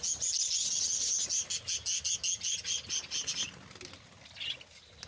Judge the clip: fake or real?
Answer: real